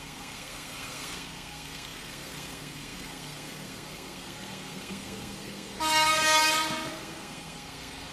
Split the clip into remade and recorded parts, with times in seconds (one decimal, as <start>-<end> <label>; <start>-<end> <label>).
0.0-8.1 remade